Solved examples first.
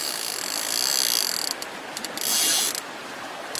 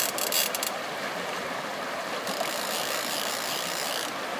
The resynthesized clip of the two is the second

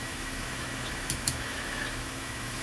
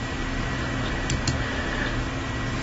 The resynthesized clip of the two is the first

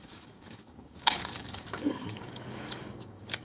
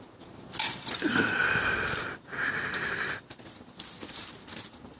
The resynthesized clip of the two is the first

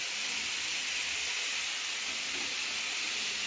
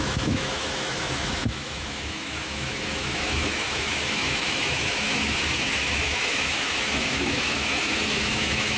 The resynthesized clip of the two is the second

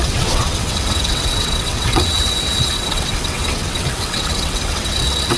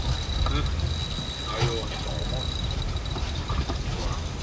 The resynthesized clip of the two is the first